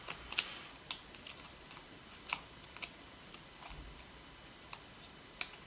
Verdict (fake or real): real